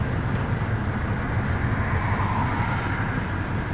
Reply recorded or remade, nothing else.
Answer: recorded